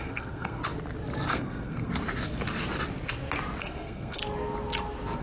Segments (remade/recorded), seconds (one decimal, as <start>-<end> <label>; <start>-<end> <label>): 0.0-0.6 remade; 0.6-1.3 recorded; 1.3-1.9 remade; 1.9-3.6 recorded; 3.6-4.2 remade; 4.2-5.2 recorded